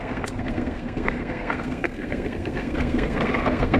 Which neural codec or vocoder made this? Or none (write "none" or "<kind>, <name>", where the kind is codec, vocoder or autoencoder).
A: codec, SNAC